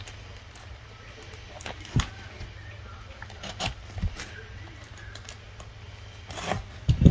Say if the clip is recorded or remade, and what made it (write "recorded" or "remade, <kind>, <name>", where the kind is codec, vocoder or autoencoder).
recorded